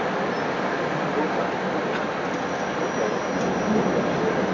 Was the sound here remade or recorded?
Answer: recorded